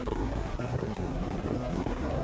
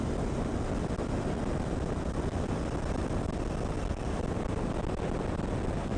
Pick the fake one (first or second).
first